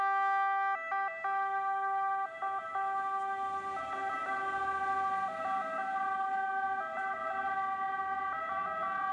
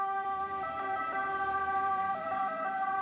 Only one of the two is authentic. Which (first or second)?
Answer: first